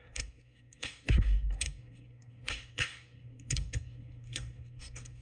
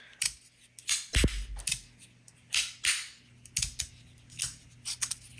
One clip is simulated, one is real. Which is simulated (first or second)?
first